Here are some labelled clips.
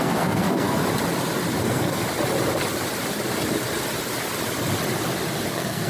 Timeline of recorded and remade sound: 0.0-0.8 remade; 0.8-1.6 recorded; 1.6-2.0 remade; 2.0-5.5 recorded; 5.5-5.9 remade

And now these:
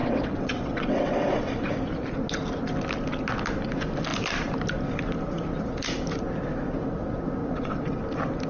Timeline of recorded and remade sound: 0.0-1.7 remade; 1.7-7.4 recorded; 7.4-8.0 remade; 8.0-8.5 recorded

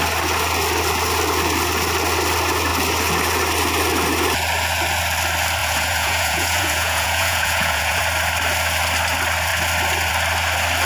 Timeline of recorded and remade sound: 0.0-5.6 recorded; 5.6-8.0 remade; 8.0-10.9 recorded

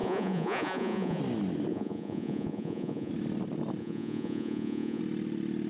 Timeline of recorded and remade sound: 0.0-1.2 remade; 1.2-1.7 recorded; 1.7-3.1 remade; 3.1-3.8 recorded; 3.8-5.0 remade; 5.0-5.7 recorded

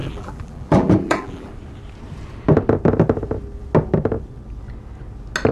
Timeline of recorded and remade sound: 0.0-1.5 remade; 1.5-5.5 recorded